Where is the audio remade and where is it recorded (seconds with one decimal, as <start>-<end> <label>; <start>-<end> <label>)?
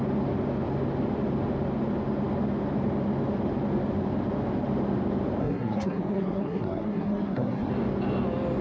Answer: 0.0-5.4 recorded; 5.4-7.7 remade; 7.7-8.6 recorded